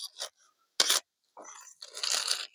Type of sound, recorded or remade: recorded